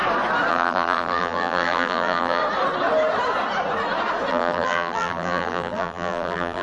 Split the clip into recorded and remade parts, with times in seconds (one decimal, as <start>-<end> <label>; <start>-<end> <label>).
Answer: 0.0-0.5 recorded; 0.5-2.4 remade; 2.4-4.3 recorded; 4.3-6.6 remade